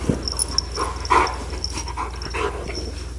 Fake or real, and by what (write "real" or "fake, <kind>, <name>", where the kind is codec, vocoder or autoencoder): real